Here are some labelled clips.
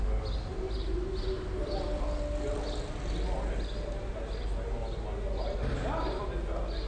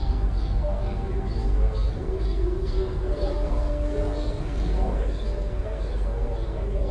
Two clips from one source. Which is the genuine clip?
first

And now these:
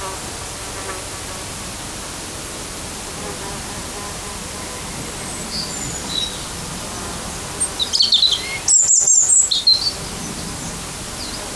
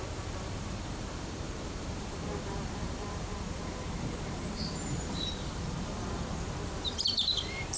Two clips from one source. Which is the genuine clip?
first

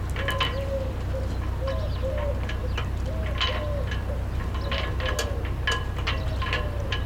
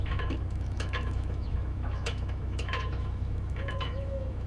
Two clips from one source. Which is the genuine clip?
first